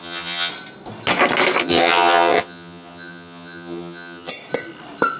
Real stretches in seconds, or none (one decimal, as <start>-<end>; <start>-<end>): 0.5-1.6; 4.3-5.2